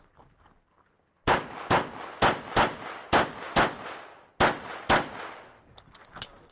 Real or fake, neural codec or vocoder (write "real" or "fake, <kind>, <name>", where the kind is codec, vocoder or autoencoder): real